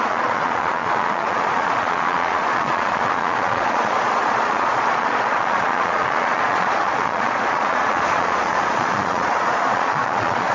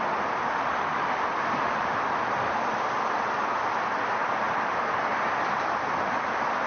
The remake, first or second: first